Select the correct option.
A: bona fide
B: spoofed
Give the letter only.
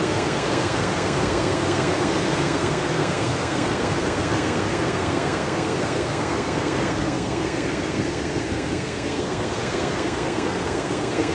B